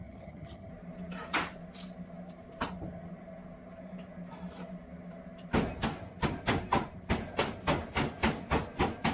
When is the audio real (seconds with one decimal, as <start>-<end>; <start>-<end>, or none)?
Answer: 0.7-9.1